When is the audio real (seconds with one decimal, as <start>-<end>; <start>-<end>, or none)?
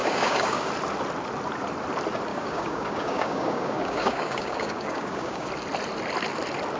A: 0.7-2.3; 5.5-6.8